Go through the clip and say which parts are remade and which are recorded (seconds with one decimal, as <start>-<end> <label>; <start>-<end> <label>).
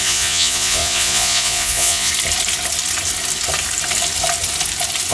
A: 0.0-2.1 remade; 2.1-5.1 recorded